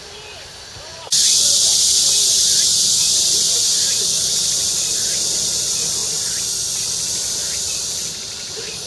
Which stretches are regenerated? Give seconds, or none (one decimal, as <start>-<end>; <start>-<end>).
none